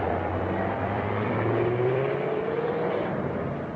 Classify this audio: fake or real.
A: fake